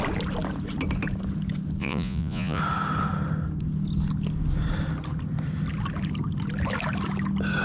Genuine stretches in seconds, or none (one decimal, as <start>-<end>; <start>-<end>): 0.0-1.8; 2.6-7.6